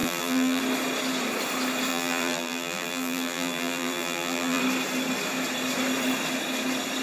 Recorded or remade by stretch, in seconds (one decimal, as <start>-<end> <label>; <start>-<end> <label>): 0.0-0.6 remade; 0.6-1.9 recorded; 1.9-4.6 remade; 4.6-7.0 recorded